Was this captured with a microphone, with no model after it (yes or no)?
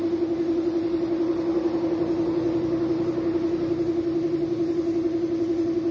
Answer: yes